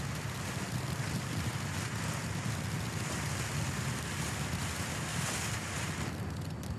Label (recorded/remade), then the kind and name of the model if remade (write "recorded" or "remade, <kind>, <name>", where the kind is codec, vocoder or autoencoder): recorded